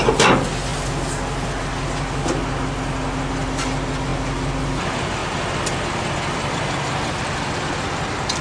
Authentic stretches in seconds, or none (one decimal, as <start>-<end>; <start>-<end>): 0.0-8.4